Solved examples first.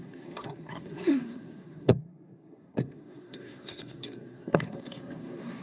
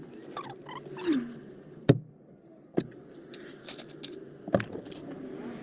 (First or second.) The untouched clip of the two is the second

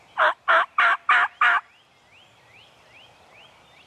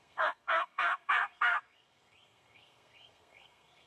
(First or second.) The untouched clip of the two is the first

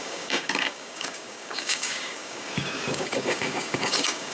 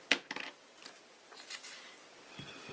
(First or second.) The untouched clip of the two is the second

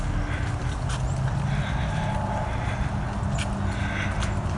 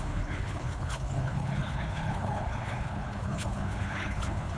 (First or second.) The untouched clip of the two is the first